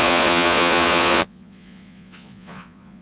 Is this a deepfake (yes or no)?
yes